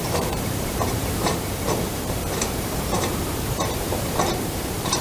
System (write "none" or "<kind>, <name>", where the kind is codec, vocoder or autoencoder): vocoder, BigVGAN v2